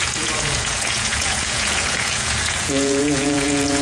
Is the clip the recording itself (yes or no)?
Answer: no